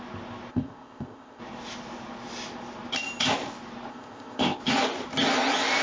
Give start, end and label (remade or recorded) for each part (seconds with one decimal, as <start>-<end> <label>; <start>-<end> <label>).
0.0-0.5 recorded; 0.5-1.4 remade; 1.4-3.9 recorded; 3.9-4.6 remade; 4.6-5.8 recorded